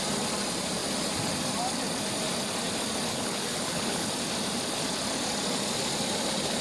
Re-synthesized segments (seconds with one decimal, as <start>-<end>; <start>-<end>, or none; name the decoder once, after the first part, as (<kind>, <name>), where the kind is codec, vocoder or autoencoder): 3.1-4.1 (codec, HILCodec)